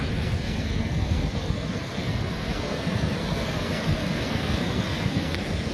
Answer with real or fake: fake